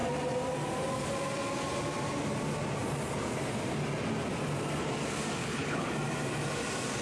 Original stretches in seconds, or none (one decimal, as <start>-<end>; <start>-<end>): 0.0-5.4; 5.9-7.0